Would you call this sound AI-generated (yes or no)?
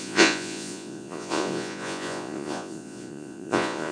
yes